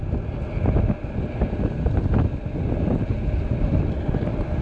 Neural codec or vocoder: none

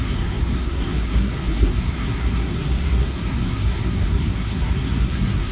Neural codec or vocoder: codec, SNAC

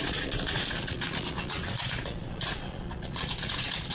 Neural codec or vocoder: vocoder, Vocos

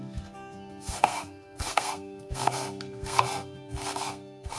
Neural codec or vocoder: codec, SNAC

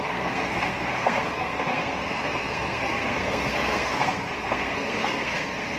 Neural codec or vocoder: codec, SNAC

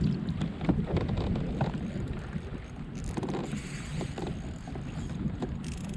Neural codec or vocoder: none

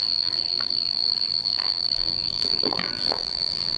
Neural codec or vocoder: vocoder, BigVGAN v2